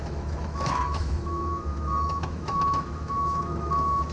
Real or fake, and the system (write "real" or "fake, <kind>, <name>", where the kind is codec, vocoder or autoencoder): fake, autoencoder, DAC-VAE